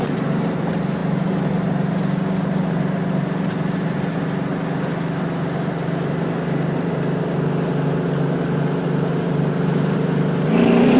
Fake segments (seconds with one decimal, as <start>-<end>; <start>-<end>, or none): none